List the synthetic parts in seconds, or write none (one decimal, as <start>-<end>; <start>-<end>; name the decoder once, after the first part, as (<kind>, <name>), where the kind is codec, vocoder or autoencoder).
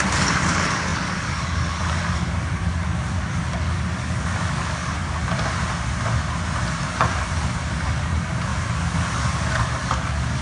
0.0-5.2 (codec, DAC); 6.9-10.4